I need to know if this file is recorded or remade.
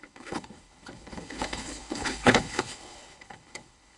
remade